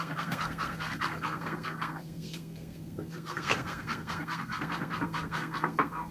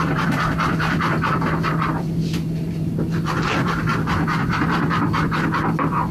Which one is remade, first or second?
first